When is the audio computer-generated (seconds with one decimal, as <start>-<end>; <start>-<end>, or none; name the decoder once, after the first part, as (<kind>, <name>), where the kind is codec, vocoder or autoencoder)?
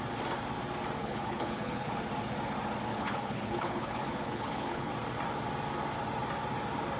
1.0-2.0 (codec, HILCodec); 2.9-4.9